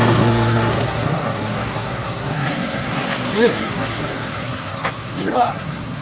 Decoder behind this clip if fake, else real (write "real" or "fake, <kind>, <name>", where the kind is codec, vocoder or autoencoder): fake, codec, SNAC